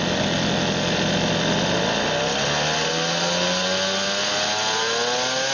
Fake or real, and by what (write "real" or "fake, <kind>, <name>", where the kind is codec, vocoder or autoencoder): real